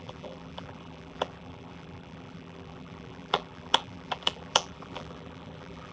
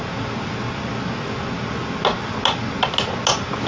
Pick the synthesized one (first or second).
first